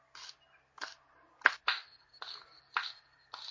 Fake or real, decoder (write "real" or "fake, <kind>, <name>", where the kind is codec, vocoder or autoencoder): real